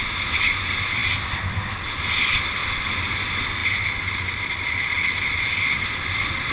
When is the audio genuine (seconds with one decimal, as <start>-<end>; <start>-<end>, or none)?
0.0-6.5